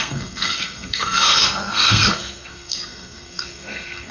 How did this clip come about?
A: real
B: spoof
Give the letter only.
B